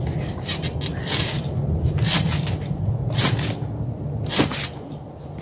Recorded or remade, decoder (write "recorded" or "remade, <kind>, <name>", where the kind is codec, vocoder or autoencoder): recorded